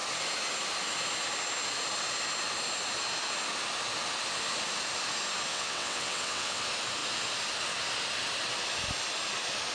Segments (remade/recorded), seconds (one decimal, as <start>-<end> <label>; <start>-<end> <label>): 0.0-5.5 recorded; 5.5-6.6 remade; 6.6-9.7 recorded